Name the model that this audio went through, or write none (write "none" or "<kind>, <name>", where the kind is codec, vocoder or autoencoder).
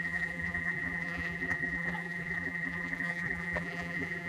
vocoder, BigVGAN v2